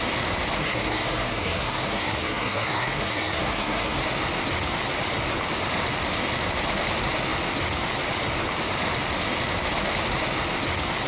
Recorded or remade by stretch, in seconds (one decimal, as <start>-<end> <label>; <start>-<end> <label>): 0.0-0.6 recorded; 0.6-4.0 remade; 4.0-11.1 recorded